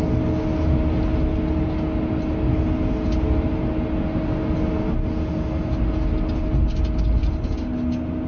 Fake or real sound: real